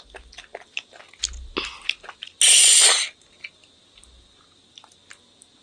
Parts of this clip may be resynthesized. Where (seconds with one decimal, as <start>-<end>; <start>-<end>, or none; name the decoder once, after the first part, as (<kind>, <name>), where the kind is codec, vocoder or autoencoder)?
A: none